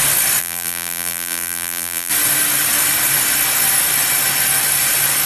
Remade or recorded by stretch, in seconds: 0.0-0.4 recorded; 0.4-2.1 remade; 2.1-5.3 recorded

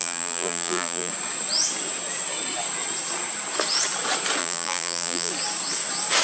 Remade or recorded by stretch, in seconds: 0.0-1.1 remade; 1.1-4.4 recorded; 4.4-5.3 remade; 5.3-6.2 recorded

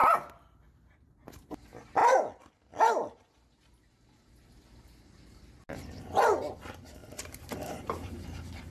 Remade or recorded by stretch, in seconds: 0.0-7.0 recorded; 7.0-8.7 remade